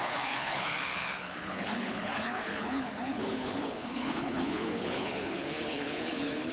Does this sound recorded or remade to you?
remade